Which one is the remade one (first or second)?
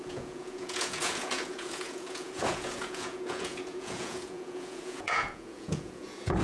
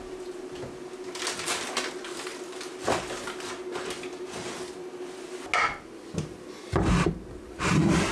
first